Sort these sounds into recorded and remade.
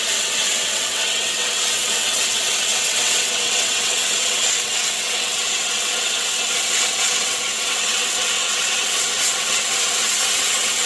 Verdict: remade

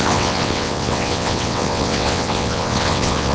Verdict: remade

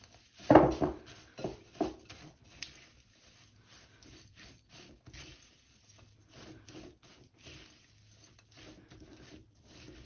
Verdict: recorded